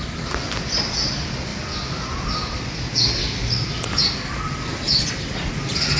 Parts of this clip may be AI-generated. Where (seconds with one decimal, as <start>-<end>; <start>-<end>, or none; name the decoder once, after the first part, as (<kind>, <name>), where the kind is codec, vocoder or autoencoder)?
none